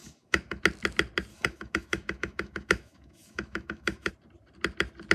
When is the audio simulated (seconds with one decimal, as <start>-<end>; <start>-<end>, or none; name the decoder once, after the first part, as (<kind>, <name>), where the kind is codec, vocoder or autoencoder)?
0.0-0.6 (autoencoder, DAC-VAE); 1.3-4.1